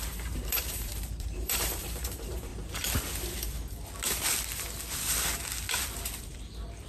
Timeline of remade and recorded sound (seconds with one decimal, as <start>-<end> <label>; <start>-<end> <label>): 0.0-2.5 remade; 2.5-6.9 recorded